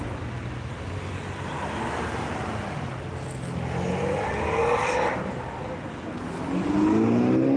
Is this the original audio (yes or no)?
yes